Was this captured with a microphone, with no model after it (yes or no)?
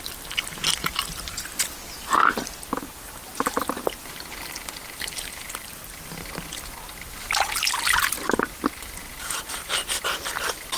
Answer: yes